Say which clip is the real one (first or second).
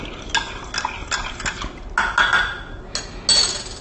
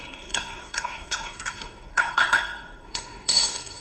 first